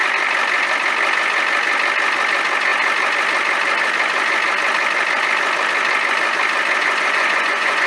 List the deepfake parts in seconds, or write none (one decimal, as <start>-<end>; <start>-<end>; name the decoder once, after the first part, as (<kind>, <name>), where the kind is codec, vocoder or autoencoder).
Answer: 6.8-7.9 (vocoder, Vocos)